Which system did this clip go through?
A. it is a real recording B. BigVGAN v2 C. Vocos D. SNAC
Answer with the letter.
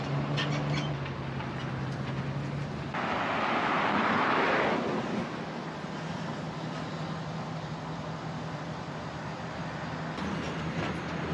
A